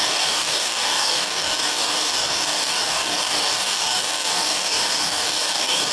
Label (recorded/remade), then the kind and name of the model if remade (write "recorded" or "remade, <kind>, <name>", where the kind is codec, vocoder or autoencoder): remade, codec, DAC